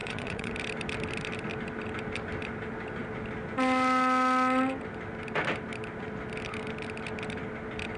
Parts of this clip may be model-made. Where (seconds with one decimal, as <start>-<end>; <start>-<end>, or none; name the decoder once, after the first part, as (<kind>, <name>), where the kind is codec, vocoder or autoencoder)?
0.0-0.5 (vocoder, Vocos)